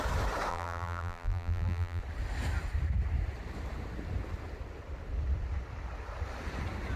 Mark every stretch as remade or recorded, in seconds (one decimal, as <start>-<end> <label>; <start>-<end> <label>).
0.0-0.5 recorded; 0.5-2.0 remade; 2.0-7.0 recorded